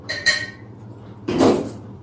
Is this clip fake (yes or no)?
yes